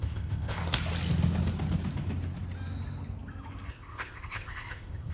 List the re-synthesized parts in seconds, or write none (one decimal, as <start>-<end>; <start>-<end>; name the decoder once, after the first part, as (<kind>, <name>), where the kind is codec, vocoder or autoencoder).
0.0-0.6 (codec, ZipCodec); 3.7-5.1